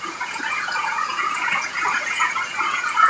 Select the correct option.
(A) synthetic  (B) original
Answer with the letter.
A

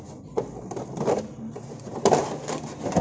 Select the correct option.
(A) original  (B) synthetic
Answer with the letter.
A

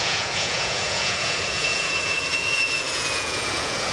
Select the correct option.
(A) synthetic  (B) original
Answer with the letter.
A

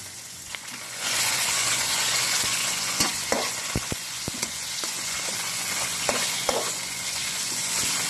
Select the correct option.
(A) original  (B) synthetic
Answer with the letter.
B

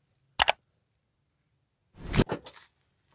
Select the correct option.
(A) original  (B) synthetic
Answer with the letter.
A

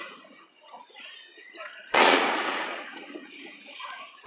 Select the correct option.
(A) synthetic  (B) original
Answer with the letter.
A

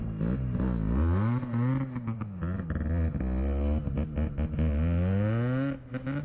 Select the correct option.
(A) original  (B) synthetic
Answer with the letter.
A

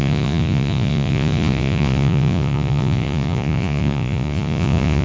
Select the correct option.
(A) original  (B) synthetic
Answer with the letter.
B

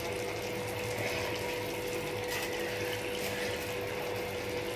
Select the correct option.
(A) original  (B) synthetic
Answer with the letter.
A